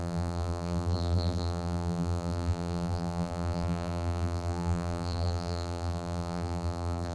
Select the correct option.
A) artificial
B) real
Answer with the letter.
A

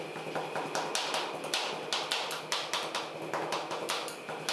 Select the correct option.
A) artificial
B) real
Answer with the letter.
B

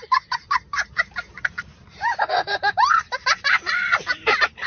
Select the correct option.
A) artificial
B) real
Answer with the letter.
A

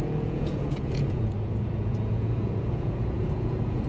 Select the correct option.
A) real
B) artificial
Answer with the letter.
B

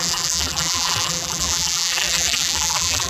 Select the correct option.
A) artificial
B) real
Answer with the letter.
A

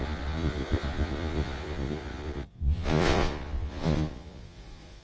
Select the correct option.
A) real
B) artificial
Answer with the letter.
B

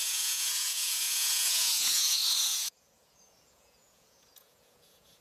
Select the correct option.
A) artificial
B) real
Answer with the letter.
A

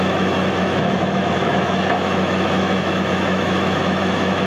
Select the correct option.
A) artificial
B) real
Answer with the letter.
A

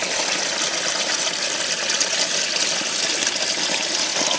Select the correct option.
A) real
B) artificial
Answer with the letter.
A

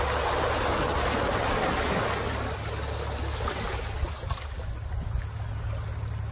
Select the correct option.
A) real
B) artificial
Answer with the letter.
A